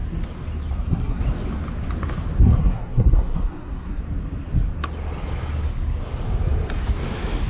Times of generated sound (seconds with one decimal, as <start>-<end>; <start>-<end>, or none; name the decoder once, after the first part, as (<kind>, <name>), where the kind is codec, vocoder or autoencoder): 0.7-1.2 (codec, SNAC); 2.4-4.0